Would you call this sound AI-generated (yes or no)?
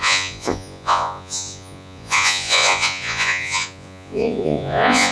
yes